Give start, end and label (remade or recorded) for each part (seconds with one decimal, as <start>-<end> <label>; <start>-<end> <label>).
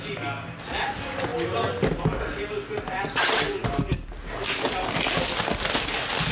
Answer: 0.0-6.3 recorded